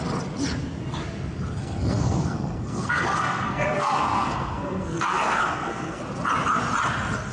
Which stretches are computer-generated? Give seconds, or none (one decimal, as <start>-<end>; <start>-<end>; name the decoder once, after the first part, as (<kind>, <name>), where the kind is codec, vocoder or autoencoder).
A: 1.6-6.0 (codec, SNAC)